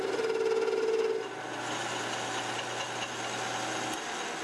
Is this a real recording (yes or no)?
yes